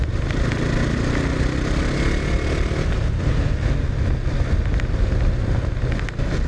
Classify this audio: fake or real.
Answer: real